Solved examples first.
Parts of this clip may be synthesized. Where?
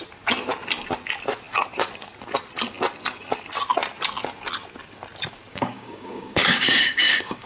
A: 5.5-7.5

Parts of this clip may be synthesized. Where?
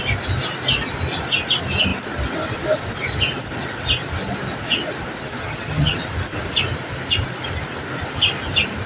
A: 5.4-6.0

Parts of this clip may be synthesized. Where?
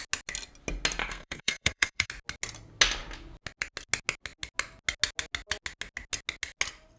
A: 1.0-2.1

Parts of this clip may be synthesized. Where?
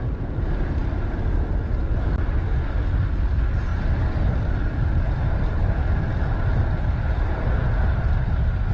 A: none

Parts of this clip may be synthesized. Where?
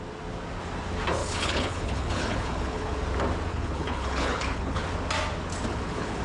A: 1.2-3.0; 3.5-4.8; 5.7-6.2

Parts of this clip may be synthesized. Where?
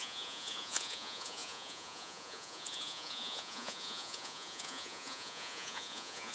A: 0.0-6.3